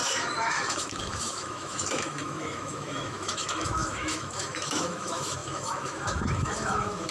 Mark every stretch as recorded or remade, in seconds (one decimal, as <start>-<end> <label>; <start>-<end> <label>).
0.0-7.1 remade